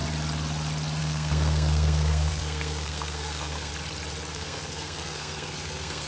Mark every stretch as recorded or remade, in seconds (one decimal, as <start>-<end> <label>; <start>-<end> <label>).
0.0-1.0 recorded; 1.0-3.7 remade; 3.7-4.3 recorded; 4.3-6.1 remade